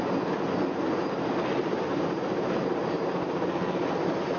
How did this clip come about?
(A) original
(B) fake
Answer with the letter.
A